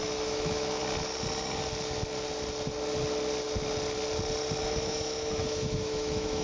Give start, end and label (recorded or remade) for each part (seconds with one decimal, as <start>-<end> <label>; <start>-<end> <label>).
0.0-0.8 remade; 0.8-4.6 recorded; 4.6-6.4 remade